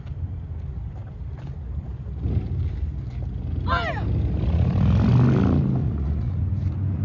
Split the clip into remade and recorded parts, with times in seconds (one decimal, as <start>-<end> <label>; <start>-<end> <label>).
0.0-5.8 recorded; 5.8-6.4 remade; 6.4-7.0 recorded